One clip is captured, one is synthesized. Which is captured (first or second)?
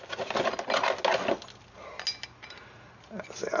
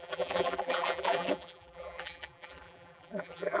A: first